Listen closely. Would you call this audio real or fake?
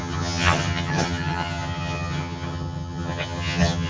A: fake